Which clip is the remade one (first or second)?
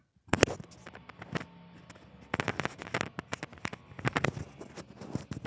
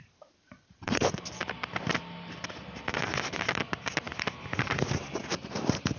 second